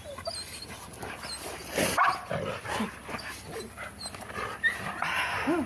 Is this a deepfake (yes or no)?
no